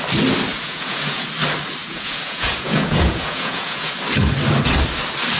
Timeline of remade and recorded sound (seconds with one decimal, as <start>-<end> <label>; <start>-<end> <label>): 0.0-0.5 recorded; 0.5-1.3 remade; 1.3-1.8 recorded; 1.8-3.9 remade; 3.9-5.4 recorded